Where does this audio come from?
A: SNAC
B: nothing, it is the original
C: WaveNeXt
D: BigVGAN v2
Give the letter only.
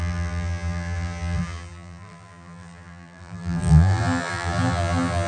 D